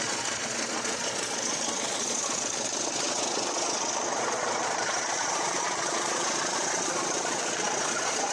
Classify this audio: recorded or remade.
remade